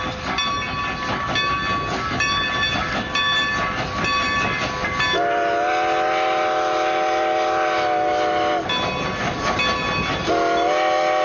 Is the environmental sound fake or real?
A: real